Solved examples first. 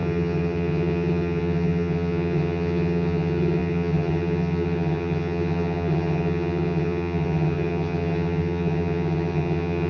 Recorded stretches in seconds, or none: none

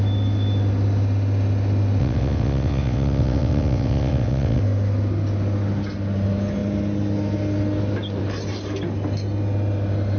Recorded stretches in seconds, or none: 0.0-2.0; 4.6-10.2